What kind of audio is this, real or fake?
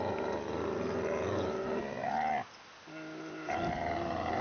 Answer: real